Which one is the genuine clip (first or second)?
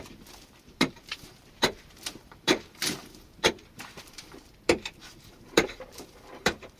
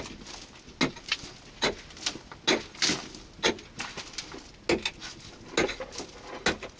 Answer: second